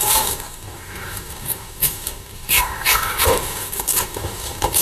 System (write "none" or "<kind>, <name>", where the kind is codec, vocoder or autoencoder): codec, DAC